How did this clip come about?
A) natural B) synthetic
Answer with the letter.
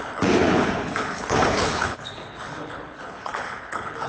B